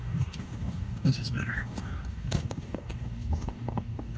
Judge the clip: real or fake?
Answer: fake